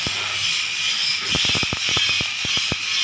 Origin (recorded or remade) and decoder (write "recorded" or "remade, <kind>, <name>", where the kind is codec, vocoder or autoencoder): recorded